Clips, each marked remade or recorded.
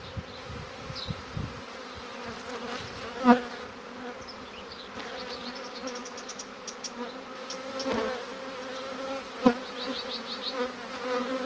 recorded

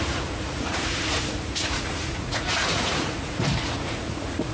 remade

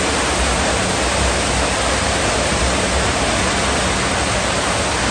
recorded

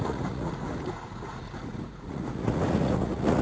remade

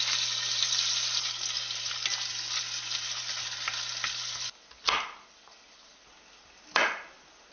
recorded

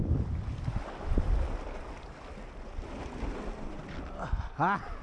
recorded